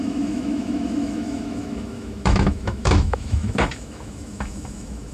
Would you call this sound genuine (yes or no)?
no